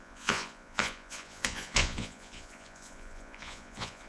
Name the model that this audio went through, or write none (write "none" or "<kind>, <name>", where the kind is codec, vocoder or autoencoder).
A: vocoder, Vocos